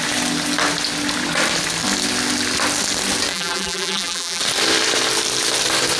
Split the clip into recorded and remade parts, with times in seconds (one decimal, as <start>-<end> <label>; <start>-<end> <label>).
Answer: 0.0-3.3 recorded; 3.3-4.4 remade; 4.4-6.0 recorded

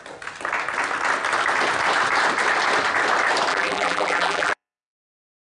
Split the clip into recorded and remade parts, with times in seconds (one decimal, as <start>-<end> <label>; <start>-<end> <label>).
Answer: 0.0-3.5 recorded; 3.5-5.5 remade

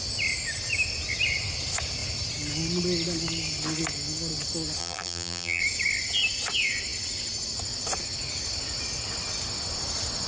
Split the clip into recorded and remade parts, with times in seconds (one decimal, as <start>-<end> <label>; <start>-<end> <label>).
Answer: 0.0-4.8 recorded; 4.8-5.6 remade; 5.6-10.3 recorded